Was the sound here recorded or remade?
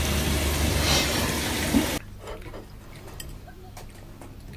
recorded